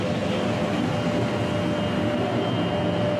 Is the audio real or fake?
real